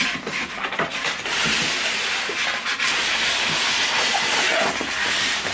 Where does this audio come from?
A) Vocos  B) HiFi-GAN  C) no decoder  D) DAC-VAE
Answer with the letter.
C